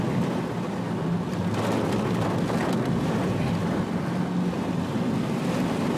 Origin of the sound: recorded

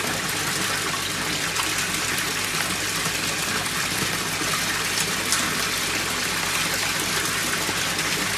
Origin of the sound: recorded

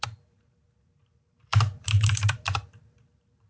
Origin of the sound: remade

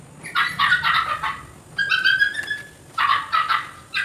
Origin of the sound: recorded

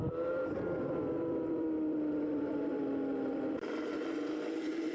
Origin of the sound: remade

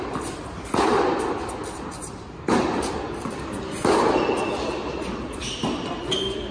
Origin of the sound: recorded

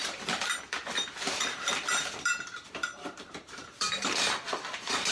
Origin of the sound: remade